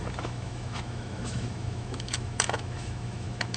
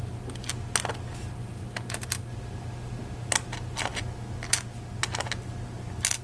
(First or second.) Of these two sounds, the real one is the second